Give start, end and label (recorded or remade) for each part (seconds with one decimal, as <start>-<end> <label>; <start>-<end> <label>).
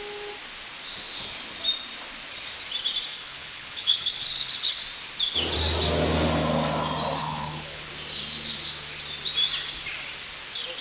0.0-3.1 recorded; 3.1-4.8 remade; 4.8-7.2 recorded; 7.2-7.9 remade; 7.9-10.8 recorded